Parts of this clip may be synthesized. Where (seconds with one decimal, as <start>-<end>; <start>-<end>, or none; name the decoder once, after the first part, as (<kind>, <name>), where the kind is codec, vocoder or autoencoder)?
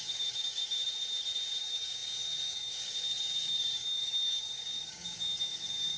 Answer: 0.0-0.6 (codec, DAC); 1.6-6.0